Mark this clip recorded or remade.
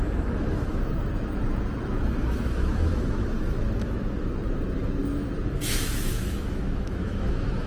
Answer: remade